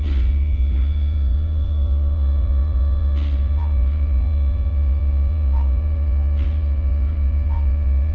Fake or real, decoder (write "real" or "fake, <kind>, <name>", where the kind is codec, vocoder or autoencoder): fake, vocoder, Vocos